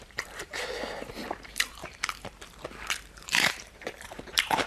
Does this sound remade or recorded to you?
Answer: remade